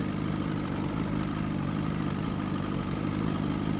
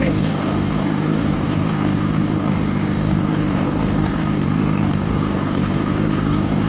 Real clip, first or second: first